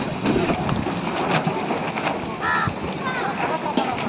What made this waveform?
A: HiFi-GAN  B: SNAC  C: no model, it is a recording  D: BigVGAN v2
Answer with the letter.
C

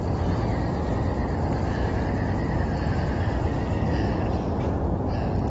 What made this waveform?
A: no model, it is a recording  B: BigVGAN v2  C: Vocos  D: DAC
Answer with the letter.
A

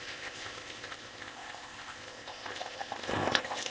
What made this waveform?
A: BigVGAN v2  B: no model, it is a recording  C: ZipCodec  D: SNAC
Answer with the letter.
C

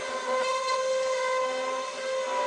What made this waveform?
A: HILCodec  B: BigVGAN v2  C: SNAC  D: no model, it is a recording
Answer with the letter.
D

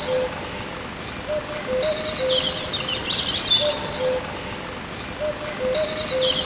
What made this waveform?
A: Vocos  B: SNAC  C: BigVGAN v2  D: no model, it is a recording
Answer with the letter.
D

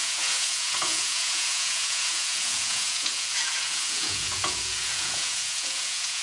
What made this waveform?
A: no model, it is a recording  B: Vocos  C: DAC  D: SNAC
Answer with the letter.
B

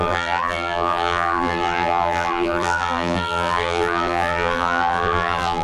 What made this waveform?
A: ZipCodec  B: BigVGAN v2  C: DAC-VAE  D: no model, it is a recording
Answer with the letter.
B